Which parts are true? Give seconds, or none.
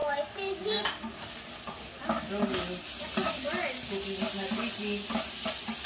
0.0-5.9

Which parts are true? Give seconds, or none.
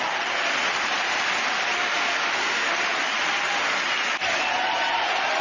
0.0-1.8; 2.7-5.4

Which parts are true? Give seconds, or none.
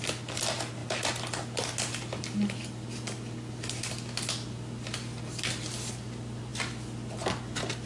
0.0-7.9